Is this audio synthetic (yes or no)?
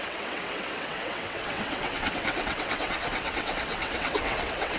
yes